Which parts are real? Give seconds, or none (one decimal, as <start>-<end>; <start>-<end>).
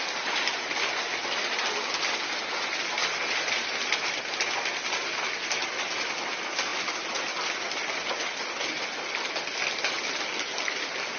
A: 0.0-3.0; 4.2-6.7; 8.8-11.2